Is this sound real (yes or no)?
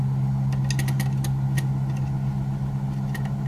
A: yes